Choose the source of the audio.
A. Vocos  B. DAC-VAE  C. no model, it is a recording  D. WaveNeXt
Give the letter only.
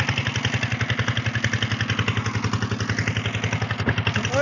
C